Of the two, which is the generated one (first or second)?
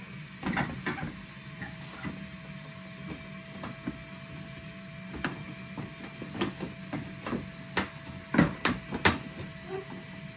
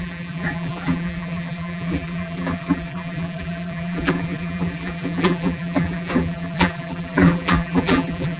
second